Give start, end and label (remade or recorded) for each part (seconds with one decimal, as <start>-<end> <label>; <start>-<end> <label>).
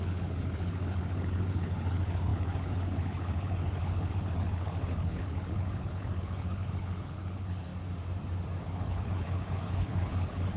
0.0-7.7 remade; 7.7-8.6 recorded; 8.6-10.6 remade